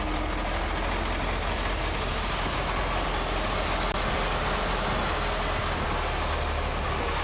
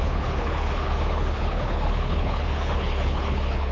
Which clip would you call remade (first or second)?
second